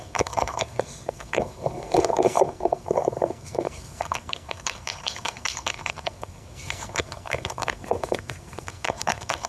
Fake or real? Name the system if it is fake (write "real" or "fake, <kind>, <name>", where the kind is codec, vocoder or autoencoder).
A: fake, codec, SNAC